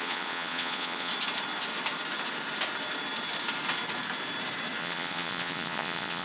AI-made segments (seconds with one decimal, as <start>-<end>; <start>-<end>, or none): 0.0-1.1; 4.8-6.2